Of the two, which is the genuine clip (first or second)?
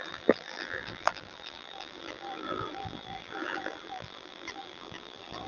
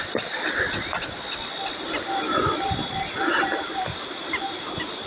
second